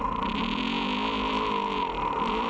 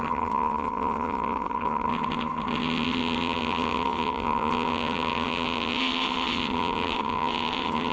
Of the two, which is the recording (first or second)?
first